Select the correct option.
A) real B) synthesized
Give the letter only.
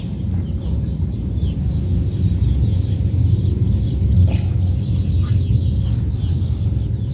A